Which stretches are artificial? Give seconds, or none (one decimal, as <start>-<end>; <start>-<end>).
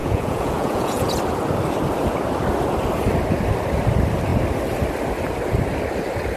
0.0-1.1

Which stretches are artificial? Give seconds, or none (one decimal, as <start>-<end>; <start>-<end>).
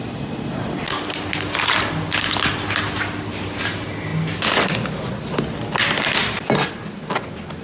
none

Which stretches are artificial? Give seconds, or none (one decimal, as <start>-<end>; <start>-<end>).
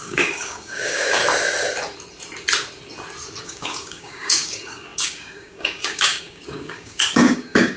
0.0-1.2; 3.4-7.8